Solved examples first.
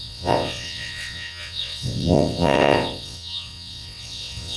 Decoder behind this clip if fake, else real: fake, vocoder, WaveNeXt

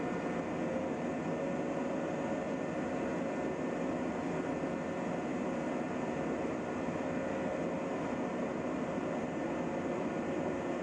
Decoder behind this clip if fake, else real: real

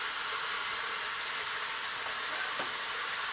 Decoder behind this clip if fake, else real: real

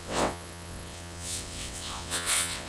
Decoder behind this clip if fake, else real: fake, vocoder, WaveNeXt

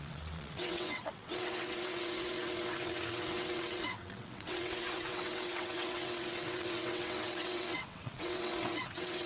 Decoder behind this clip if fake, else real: fake, vocoder, WaveNeXt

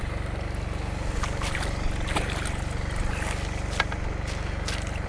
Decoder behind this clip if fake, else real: real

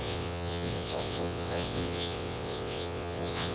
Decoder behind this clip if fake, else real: fake, vocoder, WaveNeXt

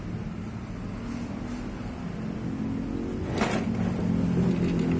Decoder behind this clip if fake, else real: real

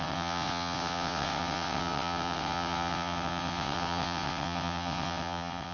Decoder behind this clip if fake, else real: fake, vocoder, WaveNeXt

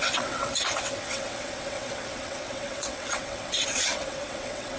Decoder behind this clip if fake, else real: fake, vocoder, WaveNeXt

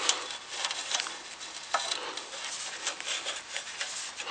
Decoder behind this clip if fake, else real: real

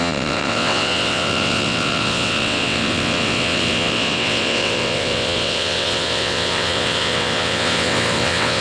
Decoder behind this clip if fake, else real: fake, vocoder, WaveNeXt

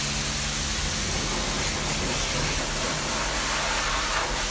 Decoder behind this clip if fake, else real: real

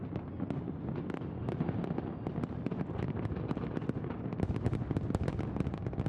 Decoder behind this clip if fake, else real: real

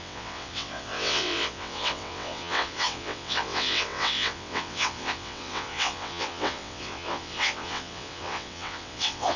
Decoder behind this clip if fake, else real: fake, vocoder, WaveNeXt